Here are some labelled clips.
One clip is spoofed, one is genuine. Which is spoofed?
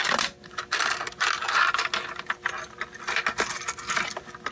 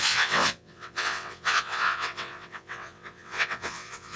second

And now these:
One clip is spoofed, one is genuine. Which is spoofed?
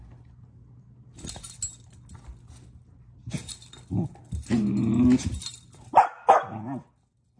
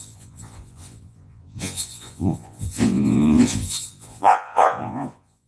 second